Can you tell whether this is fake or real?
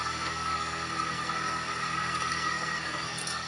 fake